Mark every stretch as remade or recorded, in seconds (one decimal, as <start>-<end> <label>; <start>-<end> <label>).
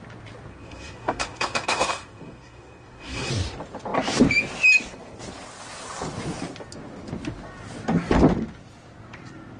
0.0-0.5 recorded; 0.5-3.3 remade; 3.3-9.6 recorded